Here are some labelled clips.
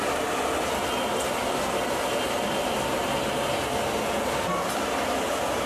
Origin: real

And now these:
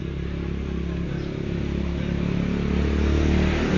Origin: real